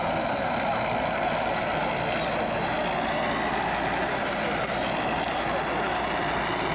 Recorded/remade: recorded